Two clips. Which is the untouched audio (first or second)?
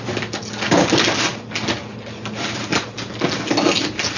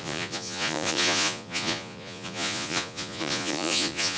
first